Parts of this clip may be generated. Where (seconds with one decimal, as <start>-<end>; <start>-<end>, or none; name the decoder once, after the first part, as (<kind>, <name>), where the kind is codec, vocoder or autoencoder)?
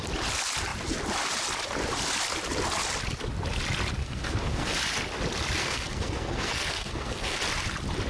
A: 4.0-4.7 (codec, SNAC); 5.6-7.4